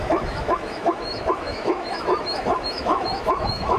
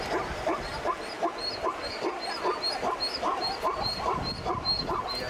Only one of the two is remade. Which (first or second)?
first